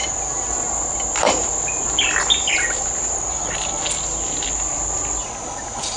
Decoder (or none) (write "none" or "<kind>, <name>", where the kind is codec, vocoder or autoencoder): none